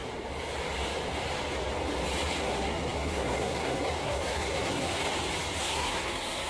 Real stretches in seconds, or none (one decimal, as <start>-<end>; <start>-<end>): 0.0-2.4; 5.0-5.6